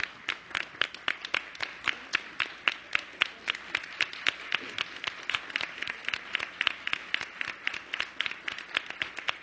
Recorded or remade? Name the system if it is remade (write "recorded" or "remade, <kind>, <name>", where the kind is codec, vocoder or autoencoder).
recorded